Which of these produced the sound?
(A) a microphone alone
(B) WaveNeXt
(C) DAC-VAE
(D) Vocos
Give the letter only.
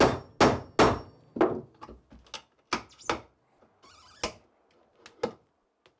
A